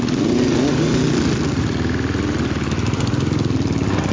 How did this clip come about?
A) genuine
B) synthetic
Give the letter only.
A